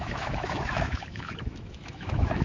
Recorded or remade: remade